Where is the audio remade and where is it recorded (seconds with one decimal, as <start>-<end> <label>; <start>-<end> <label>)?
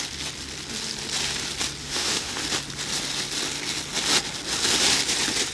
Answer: 0.0-1.8 recorded; 1.8-2.4 remade; 2.4-5.5 recorded